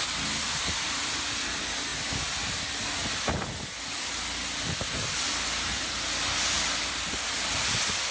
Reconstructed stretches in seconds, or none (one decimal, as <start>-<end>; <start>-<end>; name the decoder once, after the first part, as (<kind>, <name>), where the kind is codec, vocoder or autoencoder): none